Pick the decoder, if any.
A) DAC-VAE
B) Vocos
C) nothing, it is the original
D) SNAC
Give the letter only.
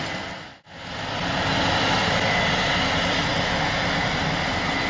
C